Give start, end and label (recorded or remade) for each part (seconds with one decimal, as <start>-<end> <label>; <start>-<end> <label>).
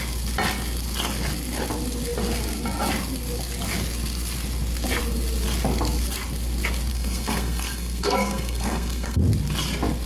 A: 0.0-6.9 recorded; 6.9-9.2 remade; 9.2-10.1 recorded